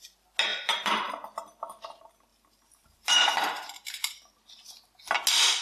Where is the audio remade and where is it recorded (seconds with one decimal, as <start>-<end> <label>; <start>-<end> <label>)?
0.0-0.5 recorded; 0.5-1.1 remade; 1.1-2.3 recorded; 2.3-4.3 remade; 4.3-5.6 recorded